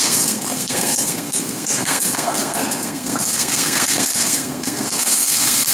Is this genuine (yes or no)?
no